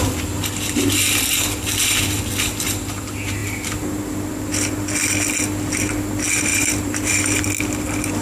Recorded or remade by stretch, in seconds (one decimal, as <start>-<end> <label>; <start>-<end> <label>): 0.0-6.5 recorded; 6.5-7.1 remade; 7.1-8.2 recorded